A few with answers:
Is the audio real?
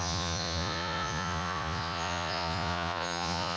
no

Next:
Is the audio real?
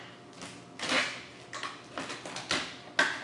yes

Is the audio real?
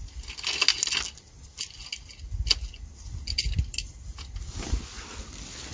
yes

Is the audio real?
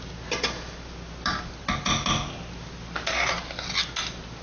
yes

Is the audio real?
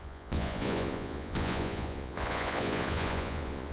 no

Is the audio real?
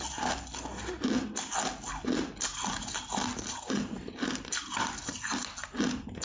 yes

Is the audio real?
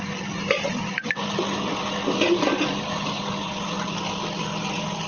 yes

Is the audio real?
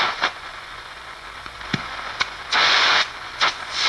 no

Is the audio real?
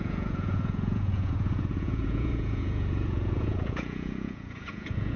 no